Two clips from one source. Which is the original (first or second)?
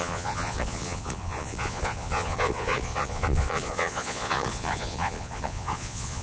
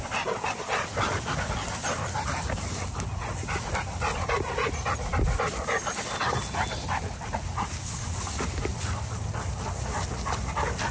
second